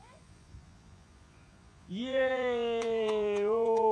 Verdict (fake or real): fake